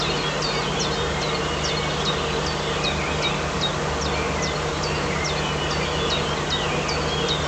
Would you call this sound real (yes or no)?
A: yes